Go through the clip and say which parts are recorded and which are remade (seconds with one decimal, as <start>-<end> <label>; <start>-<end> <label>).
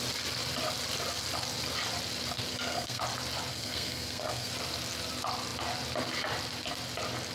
0.0-2.5 recorded; 2.5-3.0 remade; 3.0-3.5 recorded; 3.5-4.5 remade; 4.5-7.3 recorded